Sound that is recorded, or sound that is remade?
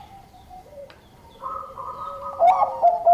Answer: remade